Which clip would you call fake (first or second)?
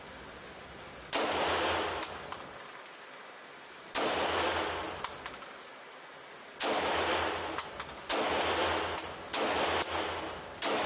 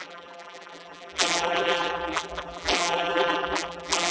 second